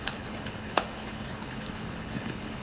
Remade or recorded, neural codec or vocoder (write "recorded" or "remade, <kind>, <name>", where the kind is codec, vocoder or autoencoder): remade, codec, HILCodec